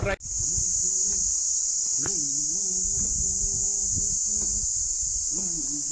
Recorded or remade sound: recorded